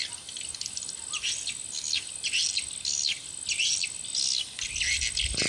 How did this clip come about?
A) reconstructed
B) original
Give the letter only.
B